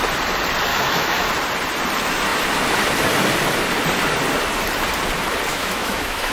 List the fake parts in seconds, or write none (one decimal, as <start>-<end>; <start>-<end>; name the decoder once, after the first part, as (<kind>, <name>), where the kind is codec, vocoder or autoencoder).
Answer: 0.7-1.3 (autoencoder, DAC-VAE); 5.5-6.3